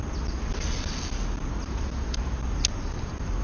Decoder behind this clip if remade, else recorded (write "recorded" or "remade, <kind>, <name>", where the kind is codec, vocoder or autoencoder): recorded